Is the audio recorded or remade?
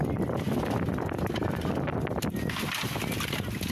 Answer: recorded